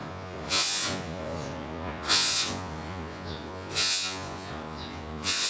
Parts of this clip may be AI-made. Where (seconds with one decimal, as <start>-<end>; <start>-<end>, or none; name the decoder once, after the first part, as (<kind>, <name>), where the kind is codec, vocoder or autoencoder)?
0.0-5.5 (vocoder, Vocos)